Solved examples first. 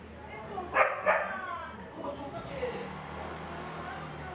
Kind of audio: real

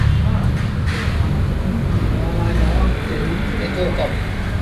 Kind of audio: real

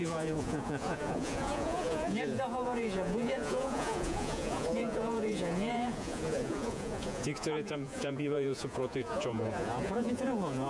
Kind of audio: fake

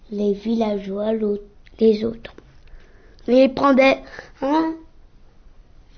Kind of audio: real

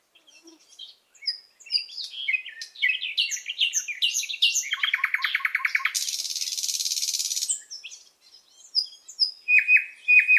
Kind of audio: real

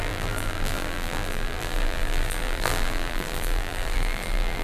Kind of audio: fake